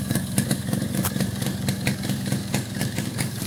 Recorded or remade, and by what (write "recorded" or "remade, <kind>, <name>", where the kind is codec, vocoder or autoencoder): remade, codec, DAC